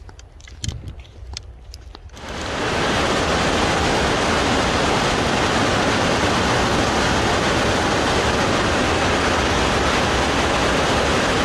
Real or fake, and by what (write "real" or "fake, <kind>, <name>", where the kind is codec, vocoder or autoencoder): real